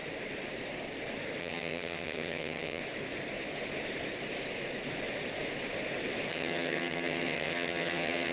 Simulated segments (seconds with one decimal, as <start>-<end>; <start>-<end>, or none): 1.4-2.8; 6.3-8.3